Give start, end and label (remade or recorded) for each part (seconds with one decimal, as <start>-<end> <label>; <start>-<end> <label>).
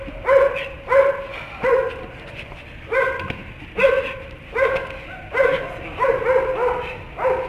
0.0-7.5 recorded